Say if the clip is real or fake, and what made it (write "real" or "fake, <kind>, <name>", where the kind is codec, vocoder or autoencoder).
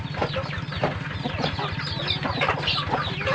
real